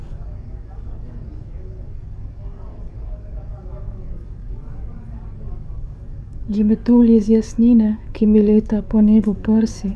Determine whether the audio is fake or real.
fake